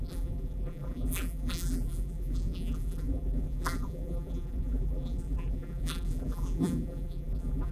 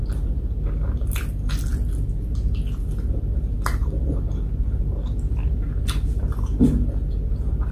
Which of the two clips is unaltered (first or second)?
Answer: second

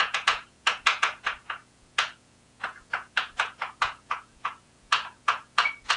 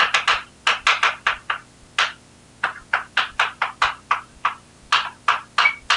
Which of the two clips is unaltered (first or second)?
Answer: second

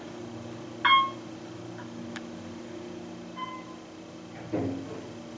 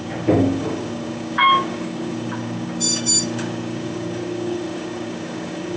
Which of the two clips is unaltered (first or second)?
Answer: first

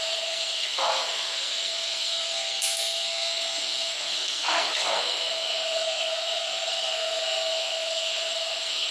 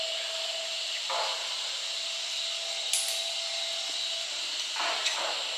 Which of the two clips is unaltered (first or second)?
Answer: second